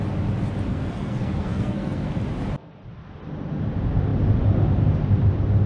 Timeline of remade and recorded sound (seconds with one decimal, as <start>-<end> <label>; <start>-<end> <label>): 0.0-0.7 recorded; 0.7-2.1 remade; 2.1-5.7 recorded